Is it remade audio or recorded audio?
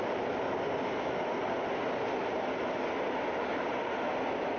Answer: recorded